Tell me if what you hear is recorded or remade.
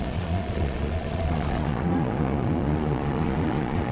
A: remade